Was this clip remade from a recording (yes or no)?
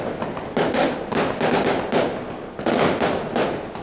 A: no